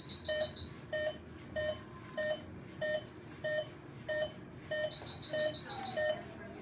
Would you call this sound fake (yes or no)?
no